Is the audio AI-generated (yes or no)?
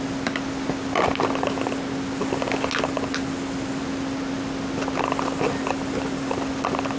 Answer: no